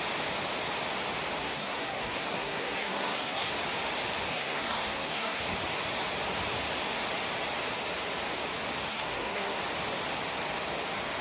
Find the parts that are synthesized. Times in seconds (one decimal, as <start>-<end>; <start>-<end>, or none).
1.4-3.5; 4.3-5.4; 8.9-9.6